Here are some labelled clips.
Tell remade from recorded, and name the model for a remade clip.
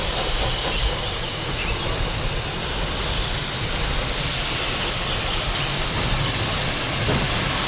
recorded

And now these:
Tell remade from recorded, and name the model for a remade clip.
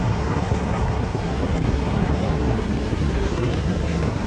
remade, codec, SNAC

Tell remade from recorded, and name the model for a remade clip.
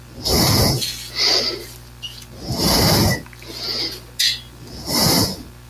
recorded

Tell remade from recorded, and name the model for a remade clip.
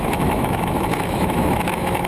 remade, autoencoder, DAC-VAE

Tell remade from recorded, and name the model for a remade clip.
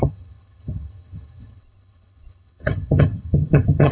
remade, vocoder, HiFi-GAN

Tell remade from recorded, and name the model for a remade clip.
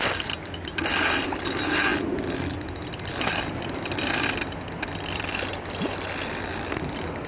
recorded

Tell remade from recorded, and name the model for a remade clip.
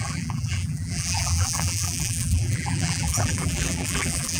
remade, vocoder, BigVGAN v2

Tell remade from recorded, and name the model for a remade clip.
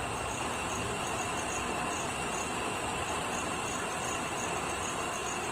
recorded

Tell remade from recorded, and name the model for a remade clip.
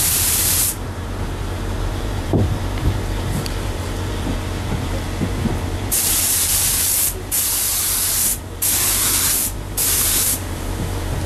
remade, vocoder, BigVGAN v2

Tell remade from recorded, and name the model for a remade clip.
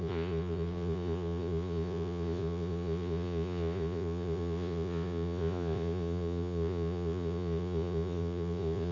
remade, vocoder, Vocos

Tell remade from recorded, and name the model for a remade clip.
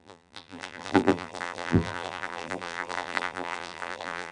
remade, vocoder, BigVGAN v2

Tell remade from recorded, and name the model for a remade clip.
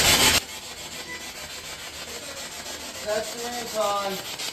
recorded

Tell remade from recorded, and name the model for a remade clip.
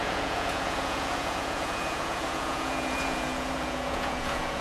remade, vocoder, Vocos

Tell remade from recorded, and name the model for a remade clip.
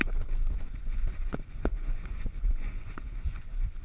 remade, vocoder, Vocos